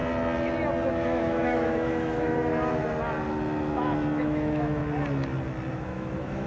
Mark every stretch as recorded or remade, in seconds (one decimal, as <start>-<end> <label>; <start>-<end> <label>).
0.0-0.9 recorded; 0.9-2.5 remade; 2.5-4.2 recorded; 4.2-4.8 remade; 4.8-5.7 recorded; 5.7-6.5 remade

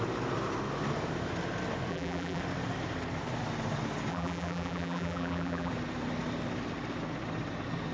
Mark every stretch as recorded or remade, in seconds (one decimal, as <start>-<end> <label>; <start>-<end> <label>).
0.0-1.9 recorded; 1.9-2.4 remade; 2.4-4.1 recorded; 4.1-5.7 remade; 5.7-7.9 recorded

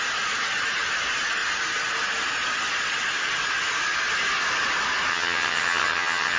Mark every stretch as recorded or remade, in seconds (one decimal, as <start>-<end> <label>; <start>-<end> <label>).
0.0-5.1 recorded; 5.1-6.4 remade